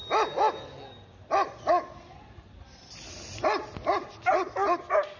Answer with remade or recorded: recorded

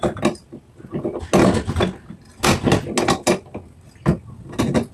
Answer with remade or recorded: recorded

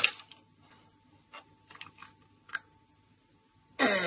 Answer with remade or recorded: recorded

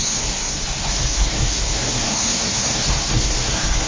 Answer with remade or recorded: remade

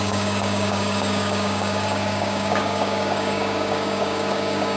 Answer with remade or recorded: remade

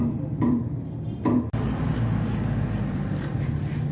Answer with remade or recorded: recorded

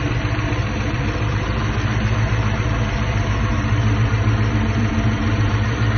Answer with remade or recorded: remade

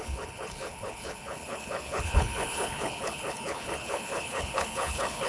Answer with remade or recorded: remade